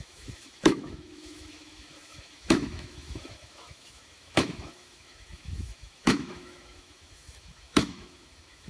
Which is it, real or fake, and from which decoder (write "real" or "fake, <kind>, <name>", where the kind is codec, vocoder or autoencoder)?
fake, autoencoder, DAC-VAE